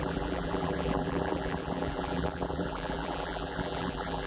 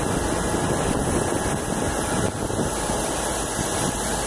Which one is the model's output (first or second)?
first